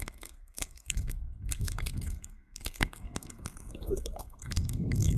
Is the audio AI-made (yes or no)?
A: yes